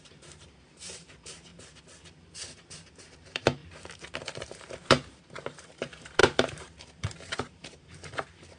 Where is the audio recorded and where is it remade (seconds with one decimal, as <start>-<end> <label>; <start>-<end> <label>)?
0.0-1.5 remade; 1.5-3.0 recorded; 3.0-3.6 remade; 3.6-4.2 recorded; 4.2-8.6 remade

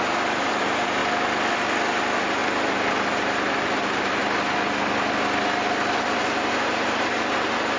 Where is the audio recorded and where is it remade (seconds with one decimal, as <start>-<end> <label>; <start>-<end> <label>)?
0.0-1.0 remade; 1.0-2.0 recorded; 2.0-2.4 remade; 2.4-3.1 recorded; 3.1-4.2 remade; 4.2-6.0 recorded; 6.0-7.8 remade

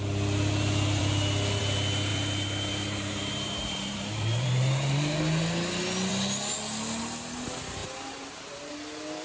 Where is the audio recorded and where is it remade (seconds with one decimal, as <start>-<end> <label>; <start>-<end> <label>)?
0.0-2.1 recorded; 2.1-5.2 remade; 5.2-7.8 recorded; 7.8-8.7 remade; 8.7-9.2 recorded

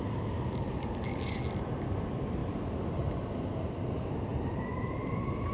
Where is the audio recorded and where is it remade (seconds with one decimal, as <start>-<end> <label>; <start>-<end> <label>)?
0.0-2.4 recorded; 2.4-3.3 remade; 3.3-4.3 recorded; 4.3-5.5 remade

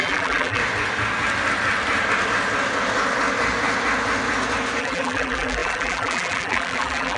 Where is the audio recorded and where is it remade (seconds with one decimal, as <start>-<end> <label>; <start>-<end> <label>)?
0.0-0.6 remade; 0.6-4.8 recorded; 4.8-7.2 remade